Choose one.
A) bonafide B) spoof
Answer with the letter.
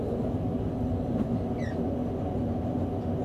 A